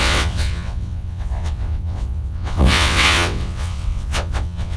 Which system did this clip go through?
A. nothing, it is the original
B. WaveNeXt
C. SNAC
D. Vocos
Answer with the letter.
B